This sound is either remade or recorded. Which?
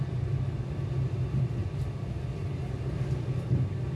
recorded